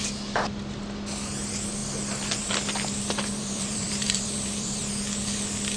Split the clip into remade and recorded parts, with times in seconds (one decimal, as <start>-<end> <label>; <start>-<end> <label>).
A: 0.0-3.4 recorded; 3.4-4.8 remade; 4.8-5.8 recorded